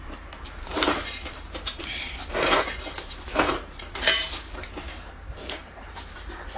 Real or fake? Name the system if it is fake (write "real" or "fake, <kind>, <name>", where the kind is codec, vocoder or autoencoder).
fake, vocoder, BigVGAN v2